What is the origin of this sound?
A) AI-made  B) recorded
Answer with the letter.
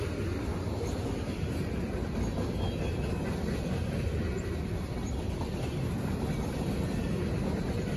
B